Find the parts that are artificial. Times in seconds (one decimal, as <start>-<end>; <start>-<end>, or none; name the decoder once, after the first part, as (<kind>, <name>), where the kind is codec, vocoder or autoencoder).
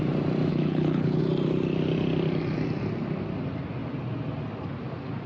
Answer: 0.5-1.2 (codec, HILCodec)